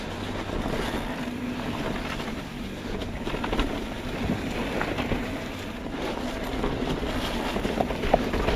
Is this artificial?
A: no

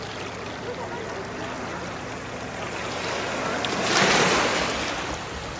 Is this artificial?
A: no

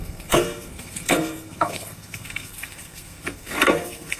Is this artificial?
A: yes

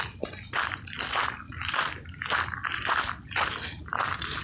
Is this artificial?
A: no